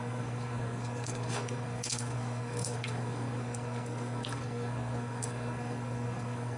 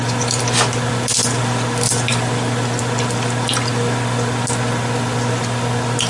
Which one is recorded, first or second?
second